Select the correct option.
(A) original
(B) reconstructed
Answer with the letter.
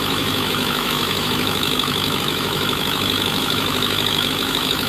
B